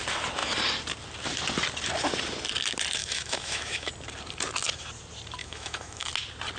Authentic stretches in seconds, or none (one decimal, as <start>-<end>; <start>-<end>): 0.0-3.0; 3.9-5.4; 6.1-6.6